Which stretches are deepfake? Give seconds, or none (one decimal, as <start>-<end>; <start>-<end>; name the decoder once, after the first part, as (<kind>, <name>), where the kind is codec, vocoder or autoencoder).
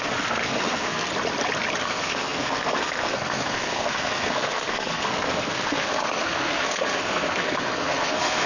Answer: 0.0-1.1 (codec, SNAC); 1.8-8.5